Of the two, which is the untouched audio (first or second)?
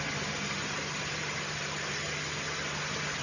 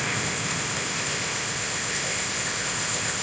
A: first